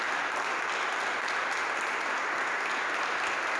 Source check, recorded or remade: recorded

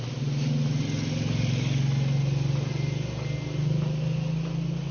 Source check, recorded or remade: recorded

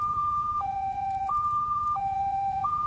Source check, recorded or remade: remade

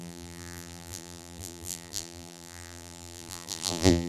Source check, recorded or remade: remade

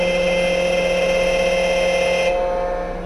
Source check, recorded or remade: recorded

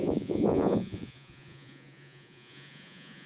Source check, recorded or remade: remade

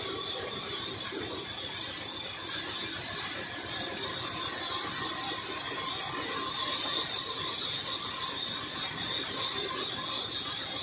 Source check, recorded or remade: recorded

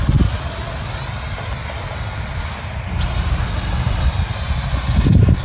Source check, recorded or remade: recorded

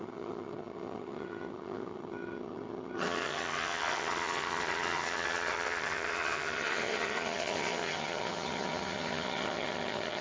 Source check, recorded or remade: remade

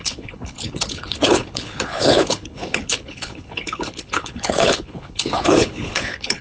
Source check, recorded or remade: remade